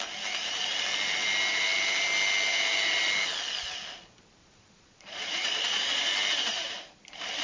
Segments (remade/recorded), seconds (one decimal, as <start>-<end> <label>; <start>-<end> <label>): 0.0-4.4 recorded; 4.4-6.1 remade; 6.1-7.4 recorded